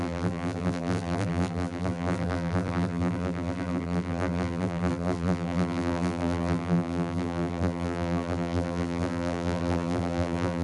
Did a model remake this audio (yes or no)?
yes